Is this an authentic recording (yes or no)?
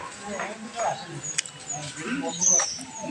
yes